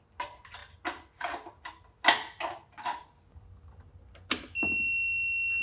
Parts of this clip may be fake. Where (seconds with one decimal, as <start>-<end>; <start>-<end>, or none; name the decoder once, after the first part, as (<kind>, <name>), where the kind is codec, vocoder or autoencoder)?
none